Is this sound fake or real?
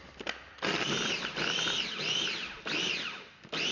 fake